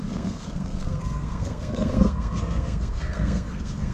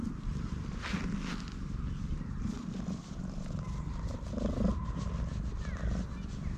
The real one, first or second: second